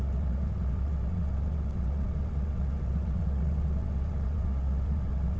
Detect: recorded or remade remade